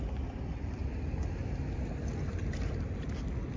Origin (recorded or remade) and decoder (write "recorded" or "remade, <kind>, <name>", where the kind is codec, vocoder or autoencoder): recorded